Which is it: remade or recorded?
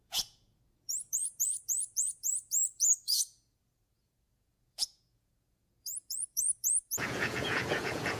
remade